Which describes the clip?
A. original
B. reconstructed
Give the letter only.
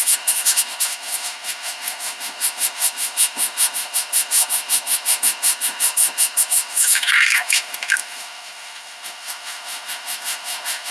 B